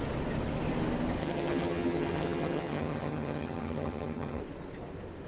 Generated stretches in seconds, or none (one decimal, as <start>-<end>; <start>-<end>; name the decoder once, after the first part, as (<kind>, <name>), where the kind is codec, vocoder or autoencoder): 1.2-4.4 (vocoder, HiFi-GAN)